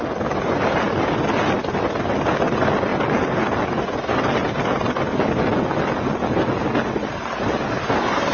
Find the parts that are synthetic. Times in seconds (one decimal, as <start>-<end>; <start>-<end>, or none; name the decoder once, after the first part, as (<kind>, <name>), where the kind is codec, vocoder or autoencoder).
none